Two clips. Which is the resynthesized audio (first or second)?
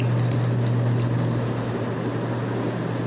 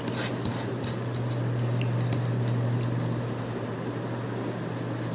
second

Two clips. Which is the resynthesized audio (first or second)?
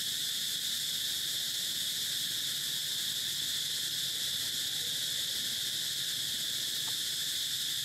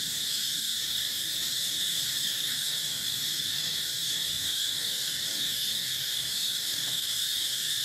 second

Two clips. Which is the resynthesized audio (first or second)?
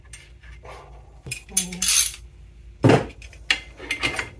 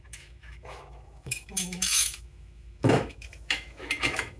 second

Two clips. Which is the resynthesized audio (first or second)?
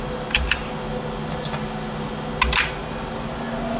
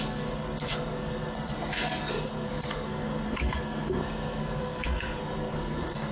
second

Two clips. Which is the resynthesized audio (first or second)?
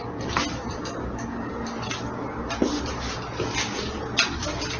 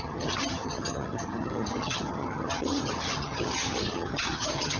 second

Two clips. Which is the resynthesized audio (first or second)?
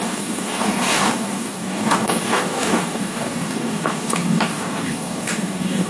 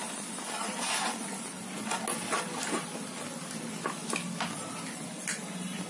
first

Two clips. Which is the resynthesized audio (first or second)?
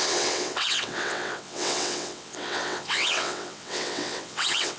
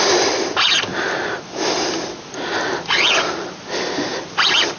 first